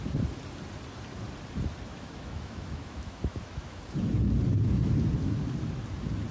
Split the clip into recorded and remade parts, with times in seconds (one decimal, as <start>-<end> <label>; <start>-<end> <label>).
0.0-1.9 recorded; 1.9-3.8 remade; 3.8-6.3 recorded